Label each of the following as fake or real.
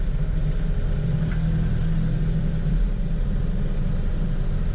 real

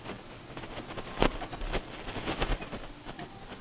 real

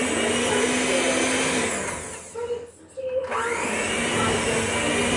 real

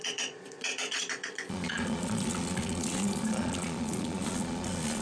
fake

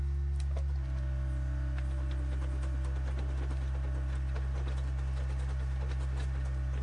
real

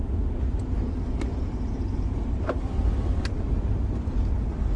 real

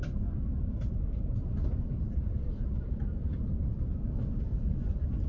fake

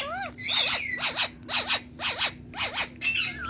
real